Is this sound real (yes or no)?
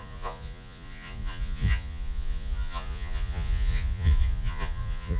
no